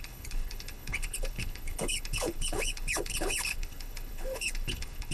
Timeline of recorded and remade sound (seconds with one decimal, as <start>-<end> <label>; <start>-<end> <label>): 0.0-5.1 remade